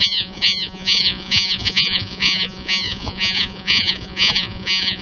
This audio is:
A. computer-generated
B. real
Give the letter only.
A